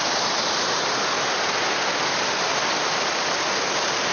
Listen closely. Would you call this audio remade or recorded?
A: recorded